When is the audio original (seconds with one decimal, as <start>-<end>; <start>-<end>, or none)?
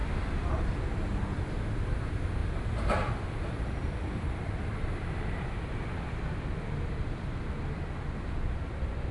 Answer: 0.0-2.4; 7.4-9.1